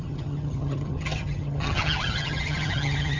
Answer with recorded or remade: remade